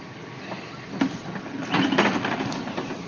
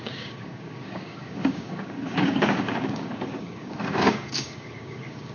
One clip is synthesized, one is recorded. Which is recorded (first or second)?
first